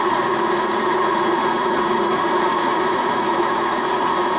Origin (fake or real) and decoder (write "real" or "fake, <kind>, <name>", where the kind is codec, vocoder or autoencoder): fake, vocoder, Vocos